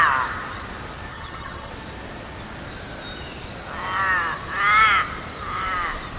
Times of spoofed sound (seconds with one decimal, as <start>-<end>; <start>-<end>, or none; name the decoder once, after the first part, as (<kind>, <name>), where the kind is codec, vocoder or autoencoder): 1.1-1.7 (vocoder, HiFi-GAN)